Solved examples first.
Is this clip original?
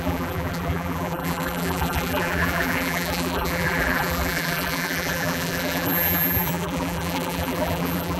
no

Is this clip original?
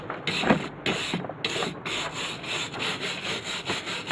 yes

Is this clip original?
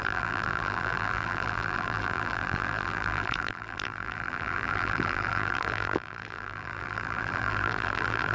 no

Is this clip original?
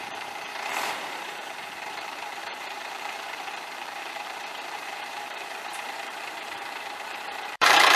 no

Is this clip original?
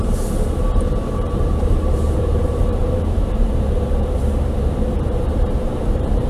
no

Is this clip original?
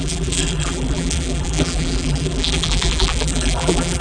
no